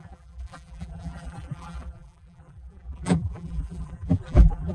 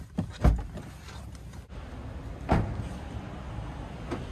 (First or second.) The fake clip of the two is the first